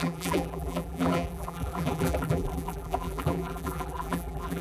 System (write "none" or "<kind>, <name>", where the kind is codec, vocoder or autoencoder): vocoder, BigVGAN v2